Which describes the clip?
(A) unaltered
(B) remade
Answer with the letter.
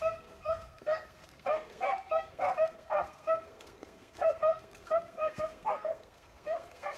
B